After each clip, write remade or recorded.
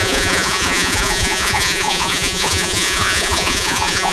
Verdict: remade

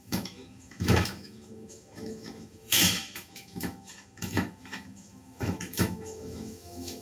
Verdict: remade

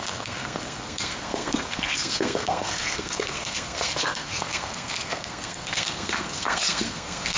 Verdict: remade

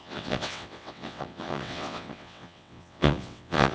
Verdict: remade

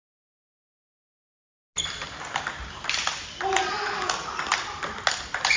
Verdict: recorded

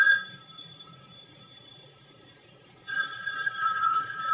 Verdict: remade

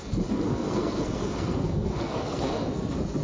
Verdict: remade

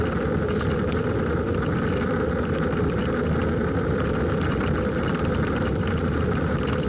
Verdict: recorded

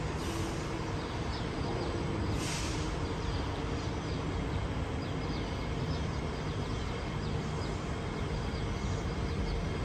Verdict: recorded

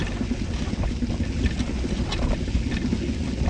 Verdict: recorded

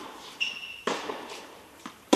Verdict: remade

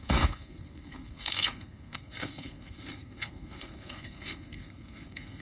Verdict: remade